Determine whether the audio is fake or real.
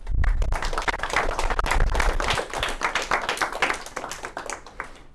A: real